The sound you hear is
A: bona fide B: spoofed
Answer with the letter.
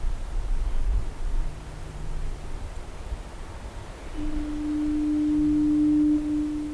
A